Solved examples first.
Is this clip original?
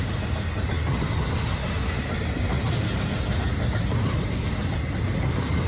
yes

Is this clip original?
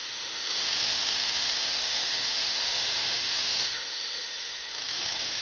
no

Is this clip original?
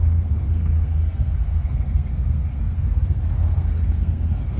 no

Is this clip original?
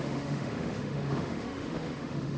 no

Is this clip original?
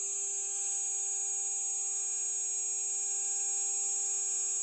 yes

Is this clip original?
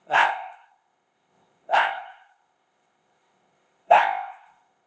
no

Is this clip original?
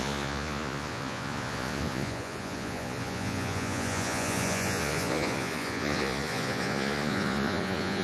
no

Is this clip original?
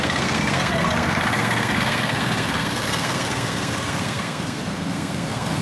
no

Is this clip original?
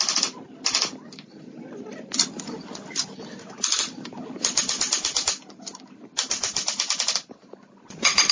yes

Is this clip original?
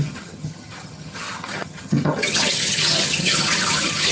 no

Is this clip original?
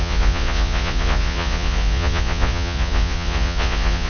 no